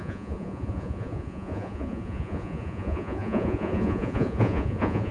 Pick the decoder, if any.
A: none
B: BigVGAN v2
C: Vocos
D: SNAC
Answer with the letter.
C